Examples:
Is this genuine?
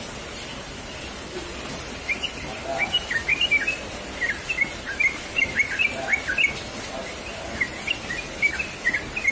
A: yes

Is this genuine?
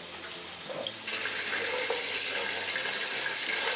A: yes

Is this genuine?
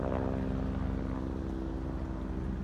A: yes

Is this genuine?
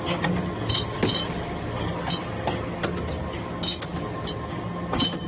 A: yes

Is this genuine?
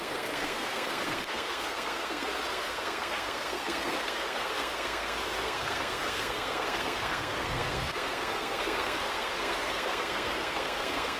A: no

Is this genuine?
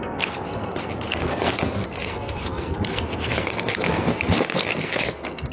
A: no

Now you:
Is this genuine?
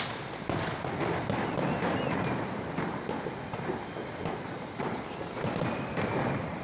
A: yes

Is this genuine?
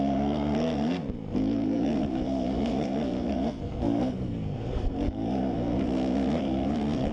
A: no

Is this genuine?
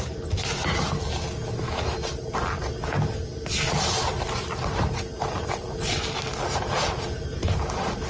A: yes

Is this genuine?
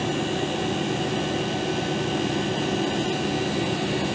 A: yes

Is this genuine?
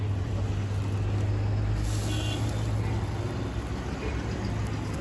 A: yes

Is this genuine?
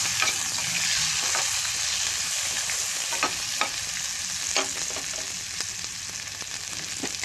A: yes